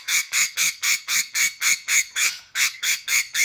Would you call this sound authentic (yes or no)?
no